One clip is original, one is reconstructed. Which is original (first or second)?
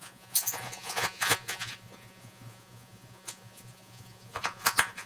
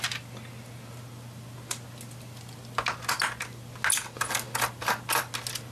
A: second